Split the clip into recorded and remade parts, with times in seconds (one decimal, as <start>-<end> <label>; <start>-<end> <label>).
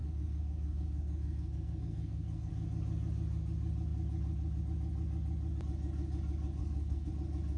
0.0-2.5 remade; 2.5-6.6 recorded; 6.6-7.1 remade; 7.1-7.6 recorded